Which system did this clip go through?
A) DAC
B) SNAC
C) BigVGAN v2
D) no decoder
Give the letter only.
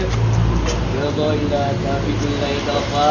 D